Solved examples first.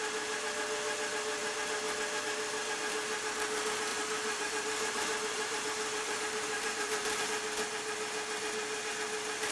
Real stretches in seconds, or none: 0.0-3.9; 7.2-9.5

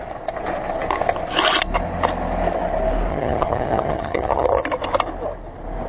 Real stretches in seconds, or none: 0.0-3.1; 4.6-5.9

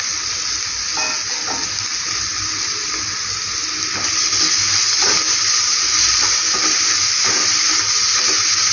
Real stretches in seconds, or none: 0.0-8.7

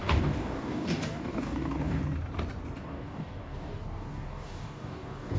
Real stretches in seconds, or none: 2.0-2.8

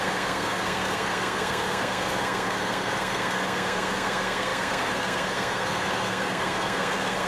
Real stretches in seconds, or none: none

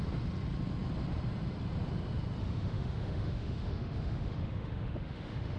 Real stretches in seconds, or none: 0.0-2.4

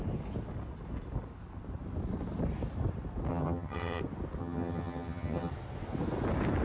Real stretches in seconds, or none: 0.0-3.3; 4.0-4.4; 5.5-6.6